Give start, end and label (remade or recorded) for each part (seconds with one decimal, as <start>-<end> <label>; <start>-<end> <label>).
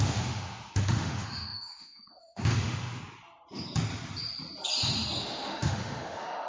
0.0-3.0 remade; 3.0-5.2 recorded; 5.2-6.5 remade